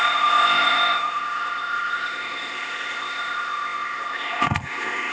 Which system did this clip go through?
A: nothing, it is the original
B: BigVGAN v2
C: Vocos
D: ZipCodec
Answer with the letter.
D